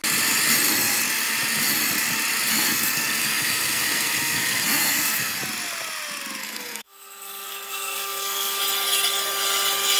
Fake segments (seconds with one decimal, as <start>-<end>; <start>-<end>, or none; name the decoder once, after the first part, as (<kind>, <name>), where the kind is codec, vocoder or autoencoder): 2.5-5.4 (codec, SNAC); 6.4-8.6